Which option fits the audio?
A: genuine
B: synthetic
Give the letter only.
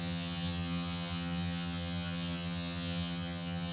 B